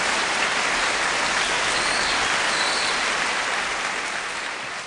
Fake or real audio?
real